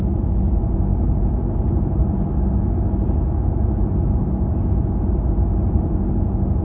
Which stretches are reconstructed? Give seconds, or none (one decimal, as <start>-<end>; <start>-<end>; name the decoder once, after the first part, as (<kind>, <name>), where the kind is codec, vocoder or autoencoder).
none